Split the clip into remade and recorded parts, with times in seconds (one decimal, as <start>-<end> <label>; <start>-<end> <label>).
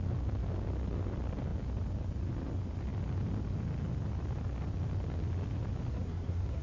0.0-5.9 recorded; 5.9-6.6 remade